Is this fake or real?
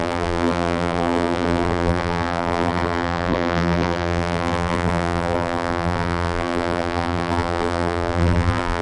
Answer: fake